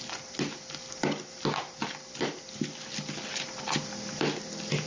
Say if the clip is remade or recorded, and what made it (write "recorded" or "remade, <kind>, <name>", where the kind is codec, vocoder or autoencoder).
recorded